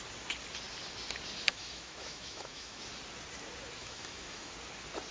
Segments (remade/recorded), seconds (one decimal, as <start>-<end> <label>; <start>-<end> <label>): 0.0-1.5 recorded; 1.5-2.8 remade; 2.8-3.8 recorded; 3.8-4.5 remade; 4.5-5.1 recorded